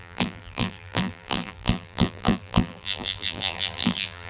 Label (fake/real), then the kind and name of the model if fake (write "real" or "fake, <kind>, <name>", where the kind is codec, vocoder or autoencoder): fake, vocoder, BigVGAN v2